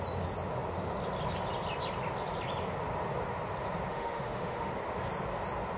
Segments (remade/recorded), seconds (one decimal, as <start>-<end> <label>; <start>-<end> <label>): 0.0-3.9 recorded; 3.9-4.7 remade; 4.7-5.8 recorded